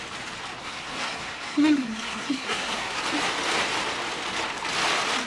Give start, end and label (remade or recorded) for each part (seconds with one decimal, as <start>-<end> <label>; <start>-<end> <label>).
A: 0.0-0.6 recorded; 0.6-3.0 remade; 3.0-5.3 recorded